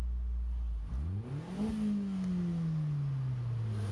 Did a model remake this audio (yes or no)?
no